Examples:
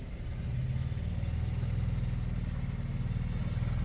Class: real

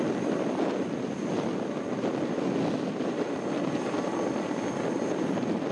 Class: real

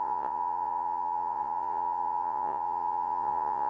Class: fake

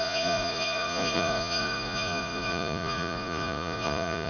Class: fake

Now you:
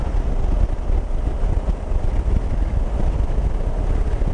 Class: real